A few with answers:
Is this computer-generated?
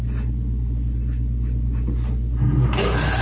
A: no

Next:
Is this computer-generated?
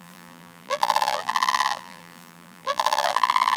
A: yes